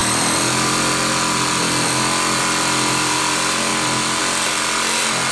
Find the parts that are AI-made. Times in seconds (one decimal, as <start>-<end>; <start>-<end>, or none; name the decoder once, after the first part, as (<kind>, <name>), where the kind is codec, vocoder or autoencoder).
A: none